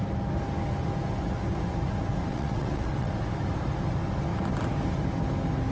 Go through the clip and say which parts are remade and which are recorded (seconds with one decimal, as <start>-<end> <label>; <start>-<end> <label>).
0.0-2.3 recorded; 2.3-3.1 remade; 3.1-5.7 recorded